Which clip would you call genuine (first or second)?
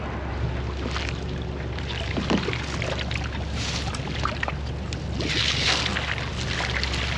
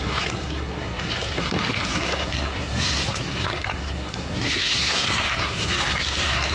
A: first